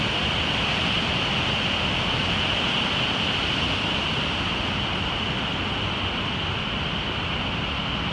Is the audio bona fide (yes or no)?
yes